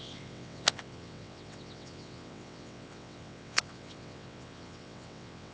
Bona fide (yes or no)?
no